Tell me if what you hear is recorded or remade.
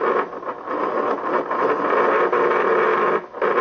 recorded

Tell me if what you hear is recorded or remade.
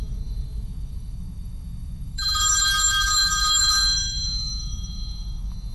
remade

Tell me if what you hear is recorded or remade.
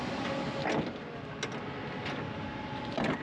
recorded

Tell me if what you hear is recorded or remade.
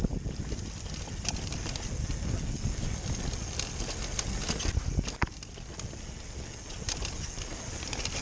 recorded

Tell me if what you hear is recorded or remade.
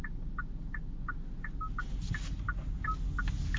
recorded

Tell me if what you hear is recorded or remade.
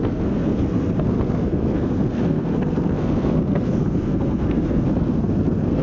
remade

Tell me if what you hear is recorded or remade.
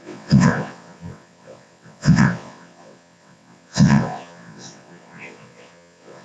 remade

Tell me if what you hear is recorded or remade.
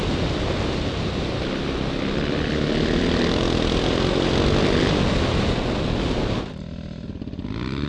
recorded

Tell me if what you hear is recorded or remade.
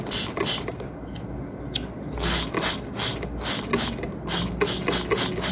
recorded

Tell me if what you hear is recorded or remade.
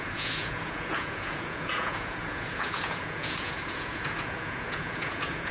remade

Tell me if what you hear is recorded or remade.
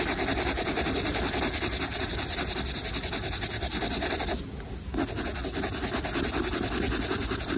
recorded